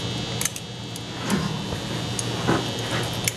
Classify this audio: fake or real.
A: real